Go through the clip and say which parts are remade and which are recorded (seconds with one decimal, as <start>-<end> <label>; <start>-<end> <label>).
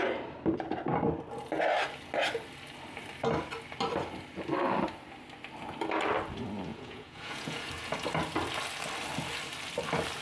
0.0-6.7 recorded; 6.7-7.7 remade; 7.7-10.2 recorded